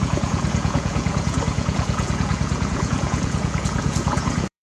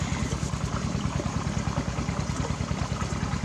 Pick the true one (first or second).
second